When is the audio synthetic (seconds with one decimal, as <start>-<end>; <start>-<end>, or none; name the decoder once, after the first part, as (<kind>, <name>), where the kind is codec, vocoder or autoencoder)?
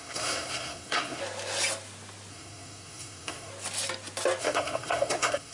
0.0-1.2 (codec, SNAC); 2.3-3.5; 4.4-5.5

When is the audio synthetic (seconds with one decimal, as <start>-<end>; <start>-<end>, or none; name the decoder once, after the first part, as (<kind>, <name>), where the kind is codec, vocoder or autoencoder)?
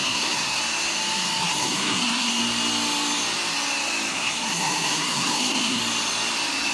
0.0-0.6 (codec, SNAC); 1.4-2.4; 4.1-5.8